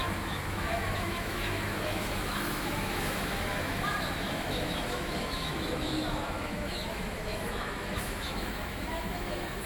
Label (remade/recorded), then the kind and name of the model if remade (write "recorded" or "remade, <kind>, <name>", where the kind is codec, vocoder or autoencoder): remade, autoencoder, DAC-VAE